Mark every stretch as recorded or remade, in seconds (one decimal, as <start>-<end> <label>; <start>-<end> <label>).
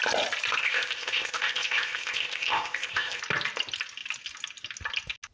0.0-0.6 recorded; 0.6-3.2 remade; 3.2-5.3 recorded